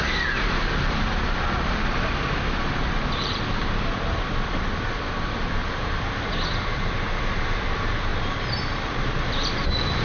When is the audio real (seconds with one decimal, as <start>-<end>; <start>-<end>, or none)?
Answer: 5.6-6.9; 8.1-8.6

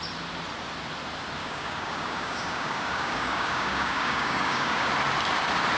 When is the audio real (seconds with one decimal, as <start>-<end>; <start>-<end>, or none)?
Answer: 0.0-1.4; 4.9-5.8

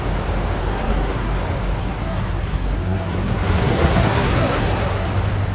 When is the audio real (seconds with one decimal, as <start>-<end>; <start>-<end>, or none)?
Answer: 0.0-0.6; 1.3-1.8; 5.1-5.5

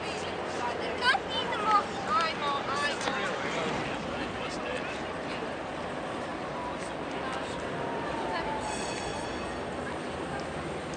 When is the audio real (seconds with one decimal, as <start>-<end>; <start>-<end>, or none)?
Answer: 6.3-7.6; 9.1-11.0

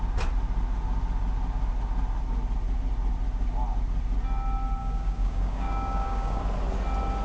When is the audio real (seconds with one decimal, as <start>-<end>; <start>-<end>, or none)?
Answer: 0.0-4.8; 6.4-7.2